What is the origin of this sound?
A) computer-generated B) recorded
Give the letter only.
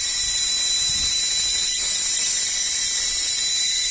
B